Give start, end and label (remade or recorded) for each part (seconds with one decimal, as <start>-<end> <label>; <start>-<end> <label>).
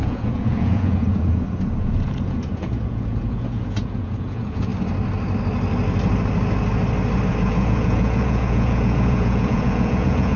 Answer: 0.0-4.7 remade; 4.7-7.4 recorded; 7.4-10.4 remade